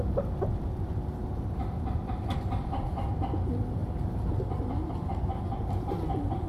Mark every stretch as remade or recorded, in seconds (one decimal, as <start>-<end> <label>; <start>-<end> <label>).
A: 0.0-1.2 recorded; 1.2-3.0 remade; 3.0-3.8 recorded; 3.8-4.4 remade; 4.4-6.5 recorded